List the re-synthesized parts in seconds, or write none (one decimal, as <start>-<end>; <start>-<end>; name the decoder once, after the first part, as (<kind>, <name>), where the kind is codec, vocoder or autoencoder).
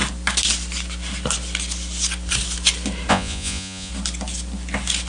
3.1-3.9 (vocoder, Vocos)